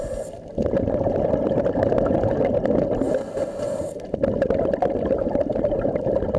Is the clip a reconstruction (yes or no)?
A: no